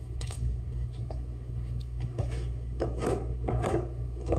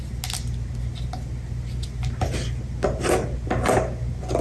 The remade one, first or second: first